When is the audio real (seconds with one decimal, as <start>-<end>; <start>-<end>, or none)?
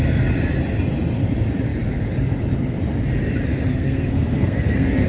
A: 0.0-3.7